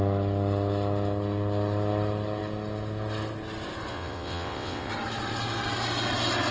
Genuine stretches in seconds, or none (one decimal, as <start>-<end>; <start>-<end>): 0.0-3.9; 4.9-6.5